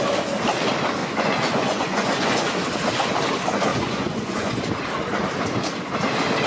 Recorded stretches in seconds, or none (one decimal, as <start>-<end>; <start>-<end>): 0.0-1.0; 2.5-3.7; 4.6-6.5